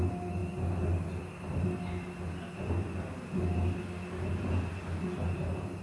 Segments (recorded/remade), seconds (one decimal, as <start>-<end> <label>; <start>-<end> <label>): 0.0-5.8 recorded